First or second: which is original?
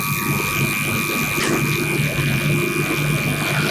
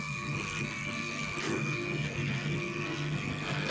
first